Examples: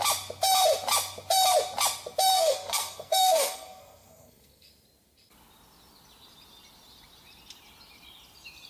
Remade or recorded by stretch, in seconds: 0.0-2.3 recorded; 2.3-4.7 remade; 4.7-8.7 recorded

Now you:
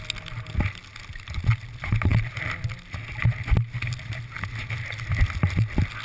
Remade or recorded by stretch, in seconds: 0.0-6.0 recorded

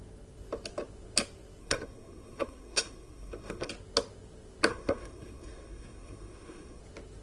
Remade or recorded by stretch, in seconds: 0.0-1.6 recorded; 1.6-3.7 remade; 3.7-4.7 recorded; 4.7-6.8 remade; 6.8-7.2 recorded

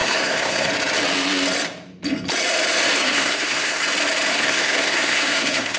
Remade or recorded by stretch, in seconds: 0.0-0.7 remade; 0.7-3.0 recorded; 3.0-3.8 remade; 3.8-4.3 recorded; 4.3-5.8 remade

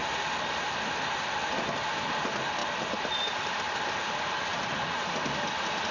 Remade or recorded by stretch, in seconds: 0.0-5.9 recorded

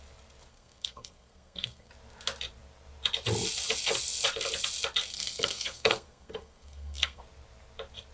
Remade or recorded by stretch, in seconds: 0.0-0.5 recorded; 0.5-1.9 remade; 1.9-5.1 recorded; 5.1-7.2 remade; 7.2-8.1 recorded

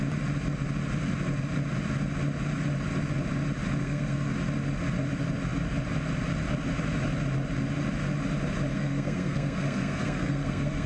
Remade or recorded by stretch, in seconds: 0.0-3.8 recorded; 3.8-4.3 remade; 4.3-8.7 recorded; 8.7-10.9 remade

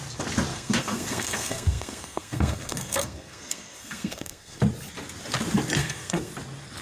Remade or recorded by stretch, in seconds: 0.0-0.5 recorded; 0.5-4.6 remade; 4.6-5.8 recorded; 5.8-6.3 remade; 6.3-6.8 recorded